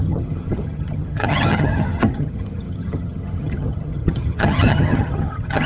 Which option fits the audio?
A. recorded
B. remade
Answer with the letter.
B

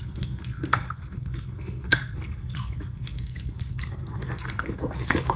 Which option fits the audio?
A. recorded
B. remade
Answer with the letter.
B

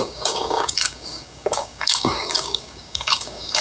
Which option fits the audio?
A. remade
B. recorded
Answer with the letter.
A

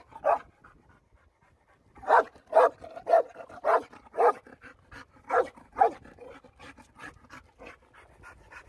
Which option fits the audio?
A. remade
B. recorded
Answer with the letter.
B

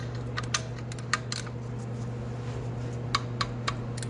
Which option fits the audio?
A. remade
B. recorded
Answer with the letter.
B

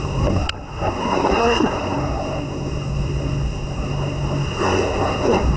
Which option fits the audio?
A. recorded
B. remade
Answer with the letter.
B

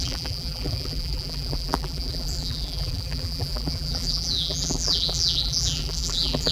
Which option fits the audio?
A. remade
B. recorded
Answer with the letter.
A